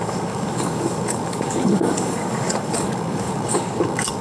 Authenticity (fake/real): fake